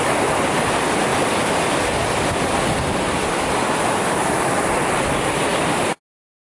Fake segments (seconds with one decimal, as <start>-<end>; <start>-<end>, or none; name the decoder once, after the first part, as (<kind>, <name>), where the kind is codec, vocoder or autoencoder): none